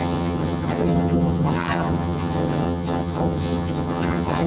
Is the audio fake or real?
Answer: fake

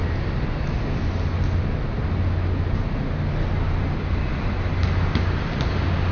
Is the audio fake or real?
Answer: real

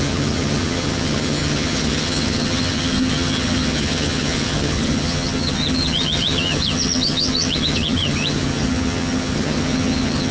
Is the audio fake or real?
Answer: fake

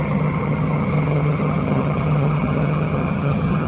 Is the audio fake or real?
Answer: fake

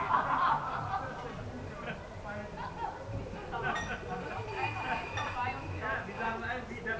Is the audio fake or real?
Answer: real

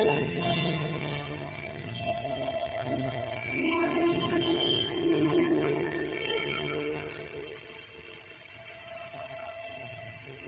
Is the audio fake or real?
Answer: fake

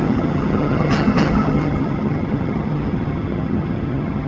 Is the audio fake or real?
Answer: fake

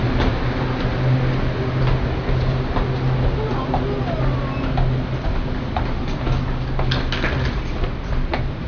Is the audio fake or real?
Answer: real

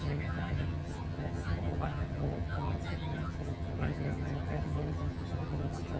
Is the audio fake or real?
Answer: fake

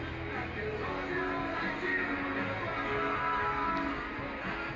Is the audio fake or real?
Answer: real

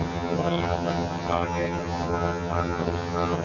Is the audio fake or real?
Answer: fake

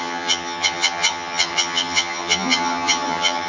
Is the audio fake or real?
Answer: fake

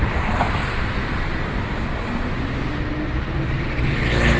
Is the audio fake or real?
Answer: real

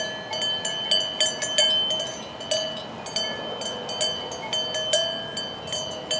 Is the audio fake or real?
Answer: real